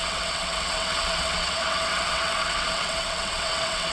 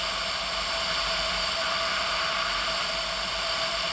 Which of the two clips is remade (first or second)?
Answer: first